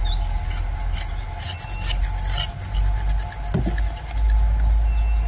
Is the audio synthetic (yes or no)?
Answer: no